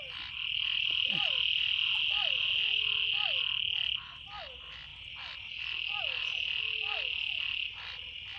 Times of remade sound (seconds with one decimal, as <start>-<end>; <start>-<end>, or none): none